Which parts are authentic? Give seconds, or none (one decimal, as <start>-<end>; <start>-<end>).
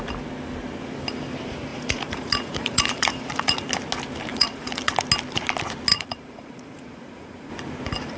0.0-1.7; 3.7-4.3; 4.9-5.9; 7.5-8.2